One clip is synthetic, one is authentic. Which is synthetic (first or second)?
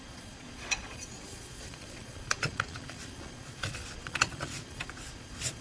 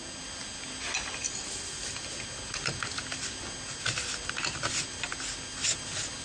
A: first